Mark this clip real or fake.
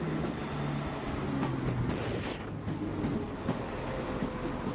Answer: real